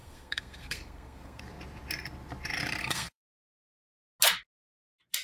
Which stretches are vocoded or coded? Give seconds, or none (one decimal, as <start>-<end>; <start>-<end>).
0.0-1.4; 2.8-3.8